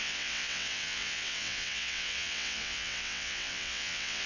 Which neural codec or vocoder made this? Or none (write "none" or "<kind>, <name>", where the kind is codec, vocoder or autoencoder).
vocoder, WaveNeXt